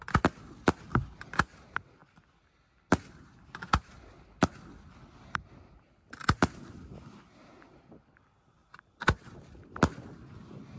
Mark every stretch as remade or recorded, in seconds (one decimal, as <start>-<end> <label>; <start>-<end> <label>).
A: 0.0-10.8 recorded